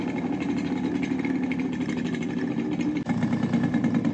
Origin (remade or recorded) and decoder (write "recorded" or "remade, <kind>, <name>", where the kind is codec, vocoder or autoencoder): recorded